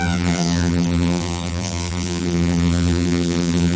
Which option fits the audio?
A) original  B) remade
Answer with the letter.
B